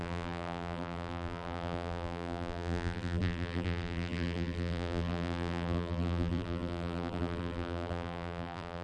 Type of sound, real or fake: fake